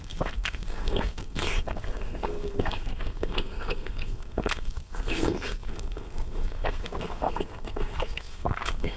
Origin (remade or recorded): remade